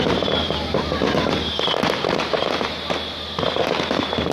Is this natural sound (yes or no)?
no